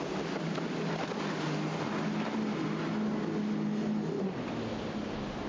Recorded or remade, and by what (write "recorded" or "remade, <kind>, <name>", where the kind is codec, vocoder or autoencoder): recorded